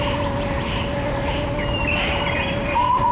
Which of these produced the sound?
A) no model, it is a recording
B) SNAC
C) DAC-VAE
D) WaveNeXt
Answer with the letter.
A